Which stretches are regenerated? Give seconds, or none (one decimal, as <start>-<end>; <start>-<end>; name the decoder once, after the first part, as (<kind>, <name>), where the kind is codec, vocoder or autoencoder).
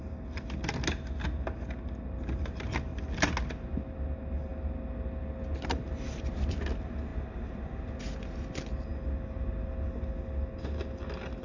none